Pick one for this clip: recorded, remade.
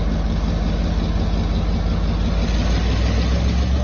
recorded